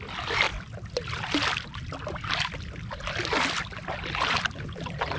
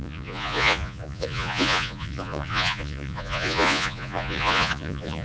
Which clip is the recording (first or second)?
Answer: first